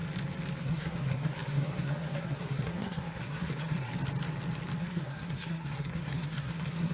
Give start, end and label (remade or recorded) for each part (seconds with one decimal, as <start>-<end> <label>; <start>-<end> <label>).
0.0-0.6 recorded; 0.6-3.9 remade; 3.9-4.8 recorded; 4.8-6.9 remade